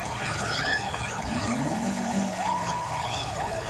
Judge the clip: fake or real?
fake